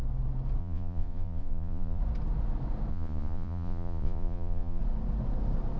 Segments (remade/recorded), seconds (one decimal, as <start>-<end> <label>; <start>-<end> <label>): 0.0-0.6 recorded; 0.6-2.0 remade; 2.0-2.9 recorded; 2.9-4.8 remade; 4.8-5.8 recorded